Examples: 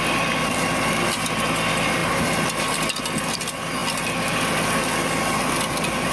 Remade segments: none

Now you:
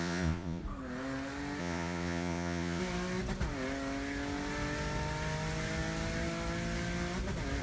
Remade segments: 0.0-0.6 (vocoder, Vocos); 1.6-2.8

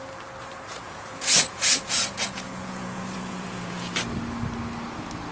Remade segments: 0.7-3.9 (vocoder, Vocos)

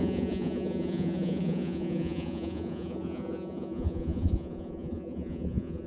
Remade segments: 0.0-5.9 (vocoder, Vocos)

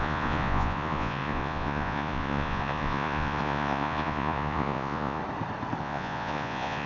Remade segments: 0.0-5.2 (vocoder, Vocos); 5.8-6.9